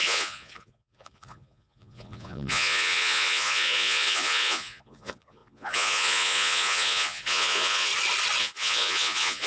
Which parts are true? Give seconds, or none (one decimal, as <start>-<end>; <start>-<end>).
7.9-8.4